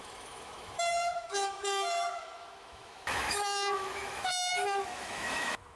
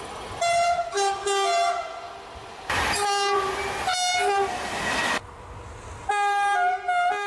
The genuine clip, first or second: second